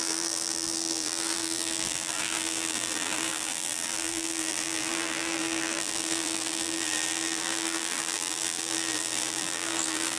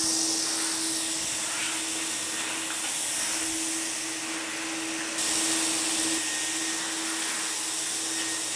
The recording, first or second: second